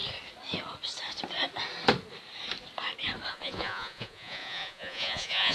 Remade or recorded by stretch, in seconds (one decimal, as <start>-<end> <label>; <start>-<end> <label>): 0.0-3.3 recorded; 3.3-5.5 remade

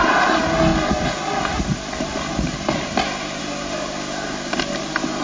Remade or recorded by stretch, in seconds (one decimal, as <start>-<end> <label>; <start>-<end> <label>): 0.0-5.2 recorded

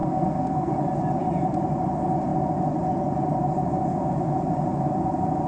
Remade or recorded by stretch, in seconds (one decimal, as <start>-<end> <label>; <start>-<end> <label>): 0.0-0.7 remade; 0.7-5.5 recorded

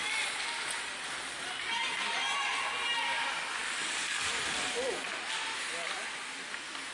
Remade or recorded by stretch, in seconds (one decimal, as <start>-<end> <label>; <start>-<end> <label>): 0.0-2.5 remade; 2.5-3.6 recorded; 3.6-5.1 remade; 5.1-6.9 recorded

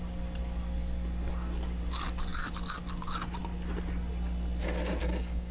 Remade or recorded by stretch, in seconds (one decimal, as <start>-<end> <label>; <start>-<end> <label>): 0.0-5.0 recorded; 5.0-5.5 remade

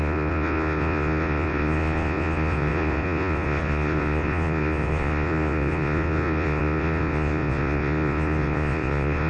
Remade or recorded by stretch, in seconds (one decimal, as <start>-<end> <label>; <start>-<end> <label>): 0.0-9.3 remade

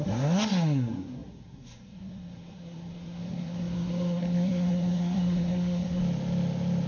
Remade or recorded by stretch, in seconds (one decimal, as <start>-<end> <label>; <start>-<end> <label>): 0.0-6.0 remade; 6.0-6.9 recorded

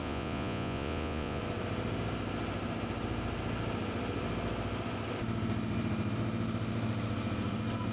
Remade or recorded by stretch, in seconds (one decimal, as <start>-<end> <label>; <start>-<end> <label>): 0.0-1.4 remade; 1.4-7.9 recorded